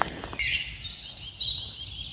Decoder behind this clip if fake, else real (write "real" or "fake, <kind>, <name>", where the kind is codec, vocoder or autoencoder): real